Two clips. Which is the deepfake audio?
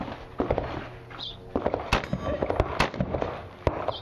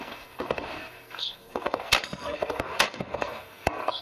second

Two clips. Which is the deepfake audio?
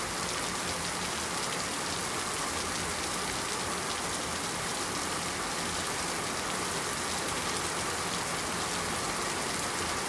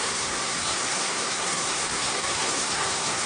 second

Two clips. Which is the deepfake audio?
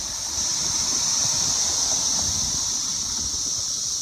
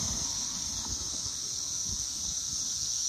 second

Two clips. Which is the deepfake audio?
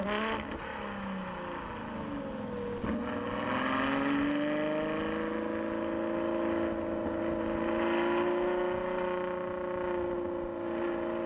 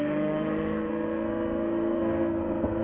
second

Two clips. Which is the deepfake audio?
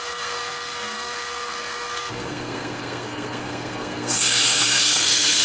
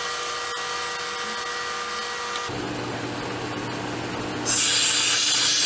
first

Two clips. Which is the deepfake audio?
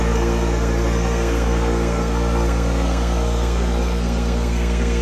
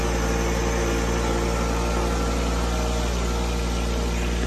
first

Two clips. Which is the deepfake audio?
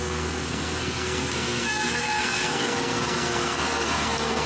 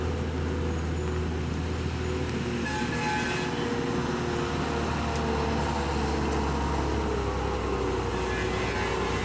first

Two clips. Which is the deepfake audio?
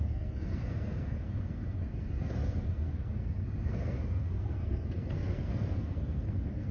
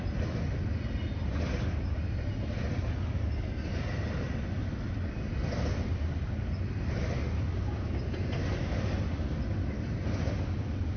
first